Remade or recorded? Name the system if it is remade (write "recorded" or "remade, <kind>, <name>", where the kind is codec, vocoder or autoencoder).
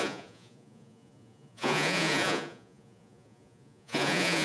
remade, vocoder, Vocos